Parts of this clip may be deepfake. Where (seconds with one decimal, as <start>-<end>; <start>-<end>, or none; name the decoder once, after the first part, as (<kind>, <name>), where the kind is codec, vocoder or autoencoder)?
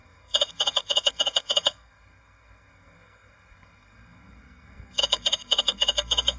0.0-6.4 (codec, SNAC)